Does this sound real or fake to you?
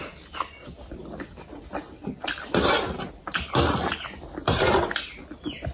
real